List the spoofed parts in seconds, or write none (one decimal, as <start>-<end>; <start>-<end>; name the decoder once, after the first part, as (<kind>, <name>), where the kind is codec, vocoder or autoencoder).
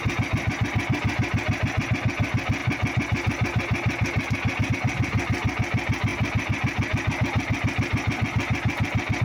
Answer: none